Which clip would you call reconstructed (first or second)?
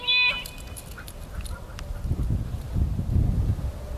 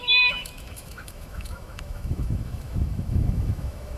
second